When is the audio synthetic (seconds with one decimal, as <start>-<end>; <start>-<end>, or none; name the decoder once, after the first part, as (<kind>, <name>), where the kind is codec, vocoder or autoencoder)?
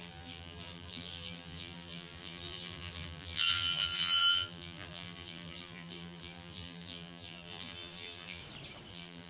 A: 0.0-8.4 (vocoder, BigVGAN v2); 8.9-9.3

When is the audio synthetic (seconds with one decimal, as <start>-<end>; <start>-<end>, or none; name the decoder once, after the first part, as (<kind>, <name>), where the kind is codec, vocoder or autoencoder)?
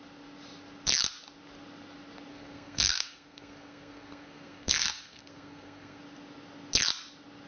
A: 2.3-6.0 (codec, SNAC)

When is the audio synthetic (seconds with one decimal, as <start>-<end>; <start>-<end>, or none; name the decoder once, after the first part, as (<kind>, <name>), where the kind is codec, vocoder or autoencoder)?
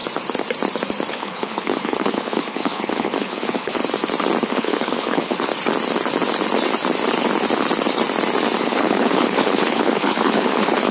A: 1.1-3.8 (codec, HILCodec); 4.5-5.5; 8.6-10.9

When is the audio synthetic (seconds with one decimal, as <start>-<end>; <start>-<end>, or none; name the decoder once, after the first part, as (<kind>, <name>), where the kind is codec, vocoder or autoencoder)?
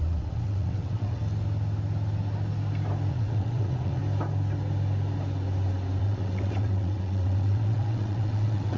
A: 0.0-1.2 (vocoder, WaveNeXt); 3.1-4.0; 6.0-8.8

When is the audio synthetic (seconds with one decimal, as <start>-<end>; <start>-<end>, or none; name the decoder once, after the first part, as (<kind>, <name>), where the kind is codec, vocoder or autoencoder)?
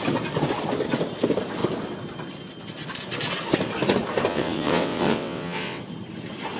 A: 4.3-5.8 (vocoder, WaveNeXt)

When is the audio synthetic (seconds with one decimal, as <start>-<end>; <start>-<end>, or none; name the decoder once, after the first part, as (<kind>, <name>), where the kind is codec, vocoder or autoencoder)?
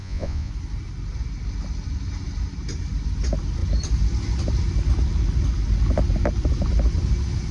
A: 0.0-0.5 (vocoder, Vocos)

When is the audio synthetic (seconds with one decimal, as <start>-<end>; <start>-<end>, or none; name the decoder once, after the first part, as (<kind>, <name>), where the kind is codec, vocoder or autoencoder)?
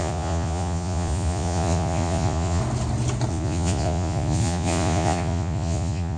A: 0.0-2.6 (vocoder, Vocos); 3.3-6.2